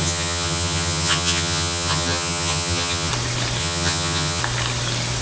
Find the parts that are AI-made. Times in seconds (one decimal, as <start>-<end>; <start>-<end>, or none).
0.0-3.1; 3.6-4.4